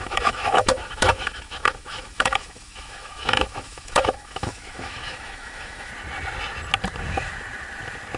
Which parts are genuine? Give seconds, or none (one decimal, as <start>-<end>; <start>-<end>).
5.9-8.2